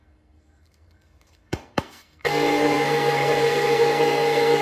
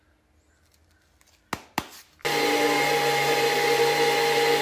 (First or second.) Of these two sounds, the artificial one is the first